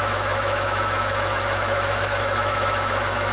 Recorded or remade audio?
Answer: remade